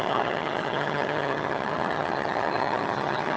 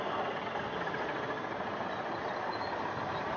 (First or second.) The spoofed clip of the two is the first